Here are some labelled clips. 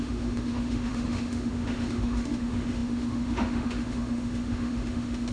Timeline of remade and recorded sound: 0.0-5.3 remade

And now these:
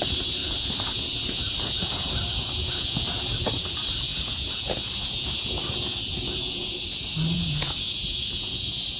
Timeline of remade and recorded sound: 0.0-9.0 remade

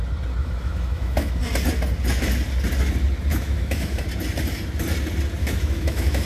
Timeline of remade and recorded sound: 0.0-0.4 recorded; 0.4-1.4 remade; 1.4-3.3 recorded; 3.3-4.0 remade; 4.0-5.4 recorded; 5.4-6.3 remade

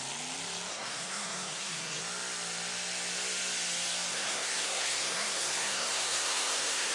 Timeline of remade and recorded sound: 0.0-0.7 recorded; 0.7-2.0 remade; 2.0-4.1 recorded; 4.1-6.9 remade

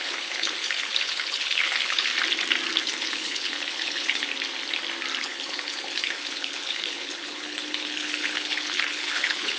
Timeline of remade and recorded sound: 0.0-2.1 remade; 2.1-2.8 recorded; 2.8-4.3 remade; 4.3-5.2 recorded; 5.2-9.6 remade

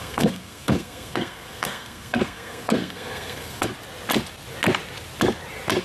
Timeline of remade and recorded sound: 0.0-3.7 remade; 3.7-5.8 recorded

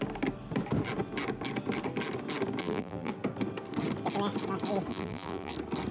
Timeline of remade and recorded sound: 0.0-2.6 recorded; 2.6-3.1 remade; 3.1-4.9 recorded; 4.9-5.5 remade; 5.5-5.9 recorded

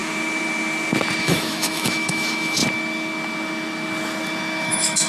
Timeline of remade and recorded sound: 0.0-1.2 recorded; 1.2-2.6 remade; 2.6-4.6 recorded; 4.6-5.1 remade